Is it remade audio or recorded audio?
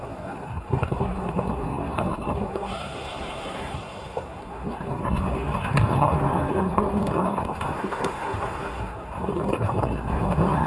remade